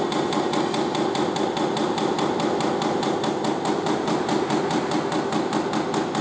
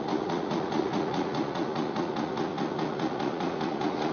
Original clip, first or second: first